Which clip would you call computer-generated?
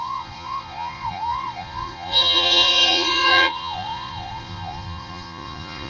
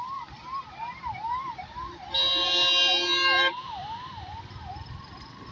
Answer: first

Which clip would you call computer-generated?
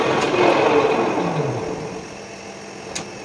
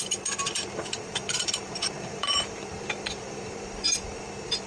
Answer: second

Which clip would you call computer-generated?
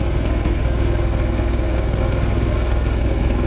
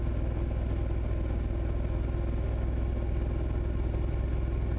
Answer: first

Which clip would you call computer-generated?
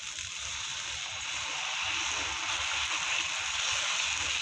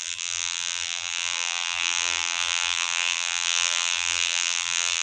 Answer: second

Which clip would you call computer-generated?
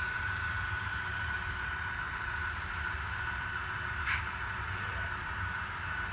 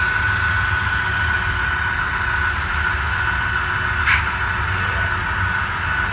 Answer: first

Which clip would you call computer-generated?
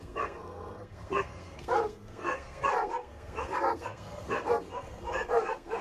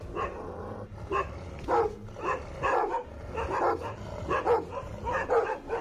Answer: first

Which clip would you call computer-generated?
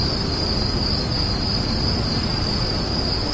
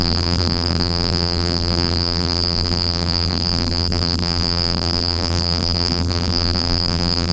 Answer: second